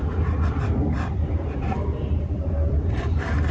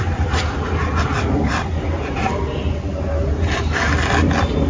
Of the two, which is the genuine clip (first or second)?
second